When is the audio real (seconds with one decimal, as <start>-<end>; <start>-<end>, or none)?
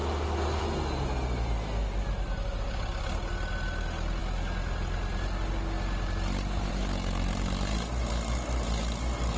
0.0-9.4